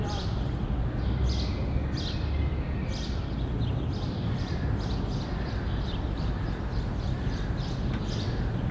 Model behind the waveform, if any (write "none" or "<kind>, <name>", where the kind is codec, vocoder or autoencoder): none